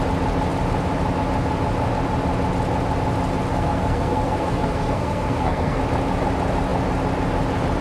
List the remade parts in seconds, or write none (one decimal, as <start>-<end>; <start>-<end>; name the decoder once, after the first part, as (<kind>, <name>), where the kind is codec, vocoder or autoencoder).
3.5-5.8 (codec, SNAC)